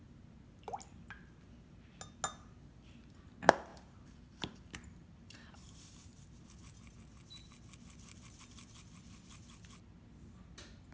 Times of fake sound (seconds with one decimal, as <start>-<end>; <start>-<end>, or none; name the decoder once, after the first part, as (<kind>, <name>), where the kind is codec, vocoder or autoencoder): 3.7-6.4 (vocoder, BigVGAN v2)